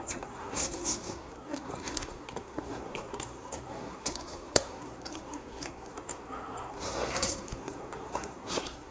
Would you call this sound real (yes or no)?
no